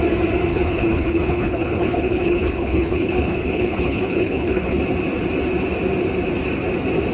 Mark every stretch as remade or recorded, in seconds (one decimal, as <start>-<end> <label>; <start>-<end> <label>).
0.0-0.5 recorded; 0.5-4.8 remade; 4.8-7.1 recorded